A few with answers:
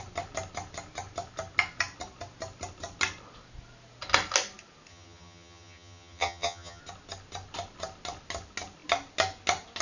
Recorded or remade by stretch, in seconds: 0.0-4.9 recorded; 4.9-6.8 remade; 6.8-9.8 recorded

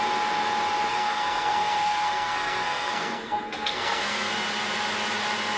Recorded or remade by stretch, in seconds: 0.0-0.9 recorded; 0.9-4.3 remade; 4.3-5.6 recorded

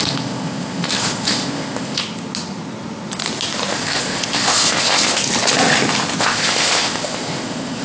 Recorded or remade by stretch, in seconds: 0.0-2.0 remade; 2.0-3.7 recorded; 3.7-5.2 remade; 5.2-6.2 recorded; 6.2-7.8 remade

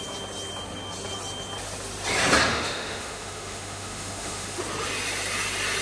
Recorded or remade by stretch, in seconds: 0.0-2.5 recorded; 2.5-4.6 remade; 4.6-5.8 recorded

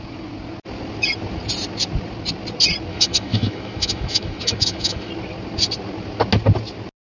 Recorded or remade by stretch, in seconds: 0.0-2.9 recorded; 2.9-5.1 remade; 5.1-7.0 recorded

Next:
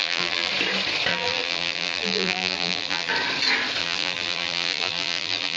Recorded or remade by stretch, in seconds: 0.0-0.5 remade; 0.5-1.1 recorded; 1.1-3.1 remade; 3.1-3.8 recorded; 3.8-5.6 remade